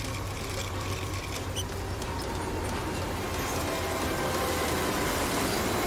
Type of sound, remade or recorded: recorded